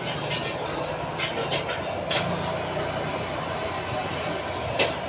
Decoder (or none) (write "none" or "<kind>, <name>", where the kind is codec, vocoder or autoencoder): none